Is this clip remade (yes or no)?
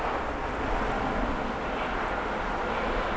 no